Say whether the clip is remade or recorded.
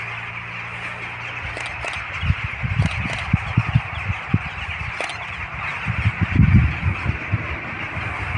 recorded